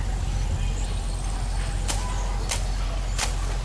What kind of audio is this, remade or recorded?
recorded